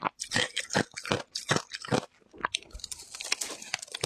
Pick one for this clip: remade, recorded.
recorded